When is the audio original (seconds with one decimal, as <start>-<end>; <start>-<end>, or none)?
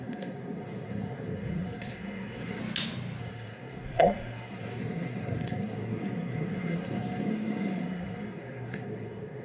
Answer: 2.6-3.2